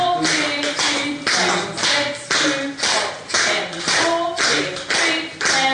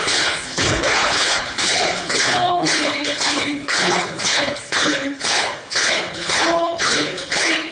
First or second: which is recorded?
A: first